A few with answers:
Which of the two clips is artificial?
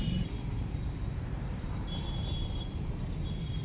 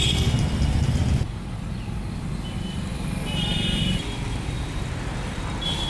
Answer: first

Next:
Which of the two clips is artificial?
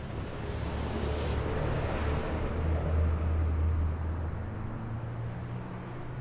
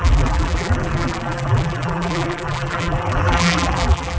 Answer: second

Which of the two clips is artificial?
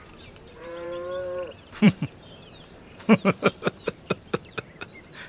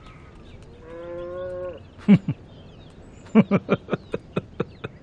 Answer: first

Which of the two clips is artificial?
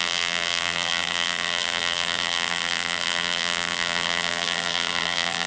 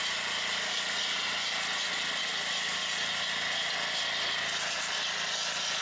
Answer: first